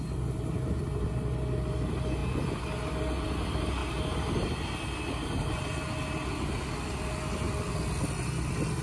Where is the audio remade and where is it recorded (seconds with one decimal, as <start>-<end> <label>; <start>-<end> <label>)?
0.0-8.8 recorded